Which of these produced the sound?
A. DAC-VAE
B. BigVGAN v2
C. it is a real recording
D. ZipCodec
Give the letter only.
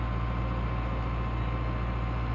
C